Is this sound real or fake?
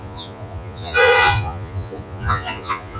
fake